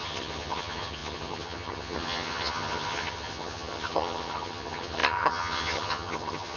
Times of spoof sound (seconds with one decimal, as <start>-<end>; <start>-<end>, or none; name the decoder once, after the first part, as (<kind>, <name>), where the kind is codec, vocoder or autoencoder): 0.0-6.6 (vocoder, HiFi-GAN)